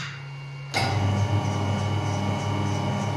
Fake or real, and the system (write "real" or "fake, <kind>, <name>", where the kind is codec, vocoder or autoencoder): real